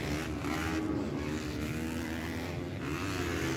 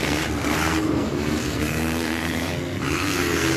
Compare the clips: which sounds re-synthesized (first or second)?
second